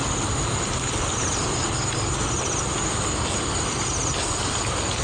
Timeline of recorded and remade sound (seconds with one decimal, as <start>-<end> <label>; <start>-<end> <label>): 0.0-5.0 recorded